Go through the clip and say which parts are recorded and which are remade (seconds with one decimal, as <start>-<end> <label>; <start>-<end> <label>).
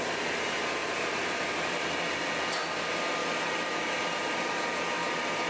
0.0-0.8 recorded; 0.8-1.4 remade; 1.4-3.2 recorded; 3.2-5.5 remade